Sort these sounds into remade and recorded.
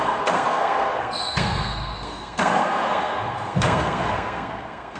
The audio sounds remade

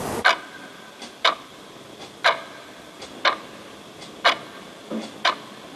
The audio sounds recorded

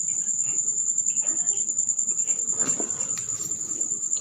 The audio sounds recorded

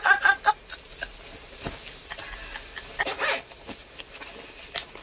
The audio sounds recorded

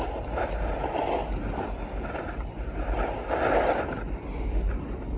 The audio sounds recorded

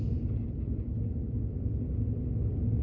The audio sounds recorded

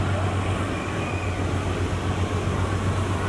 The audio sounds recorded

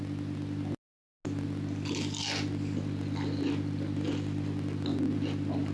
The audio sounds recorded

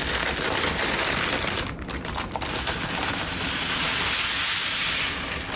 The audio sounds recorded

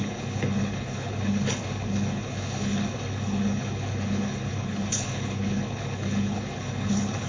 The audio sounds remade